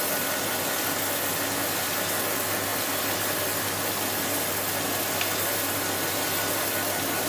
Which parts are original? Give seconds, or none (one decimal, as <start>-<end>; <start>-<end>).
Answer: 0.0-7.3